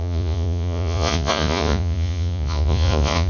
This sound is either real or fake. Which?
fake